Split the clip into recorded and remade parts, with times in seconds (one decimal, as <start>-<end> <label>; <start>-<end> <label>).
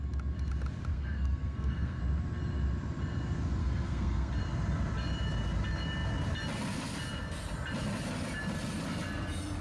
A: 0.0-0.9 recorded; 0.9-2.0 remade; 2.0-3.6 recorded; 3.6-4.3 remade; 4.3-9.6 recorded